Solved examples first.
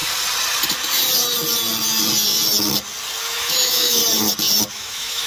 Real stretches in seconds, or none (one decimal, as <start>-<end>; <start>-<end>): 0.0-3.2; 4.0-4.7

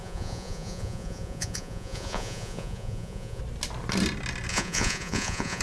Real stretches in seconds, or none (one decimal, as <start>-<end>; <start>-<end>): 3.4-4.5

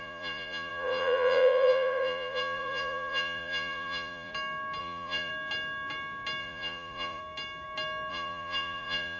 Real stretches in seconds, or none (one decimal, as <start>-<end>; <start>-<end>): 4.3-4.8; 5.3-6.4; 7.2-8.1